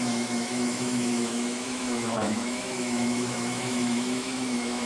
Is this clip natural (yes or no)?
no